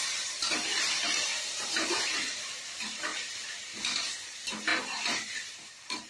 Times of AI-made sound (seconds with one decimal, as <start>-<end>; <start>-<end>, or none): 0.0-6.1